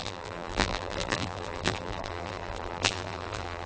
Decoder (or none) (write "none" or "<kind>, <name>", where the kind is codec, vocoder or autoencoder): vocoder, BigVGAN v2